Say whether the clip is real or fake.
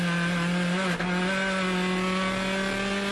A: real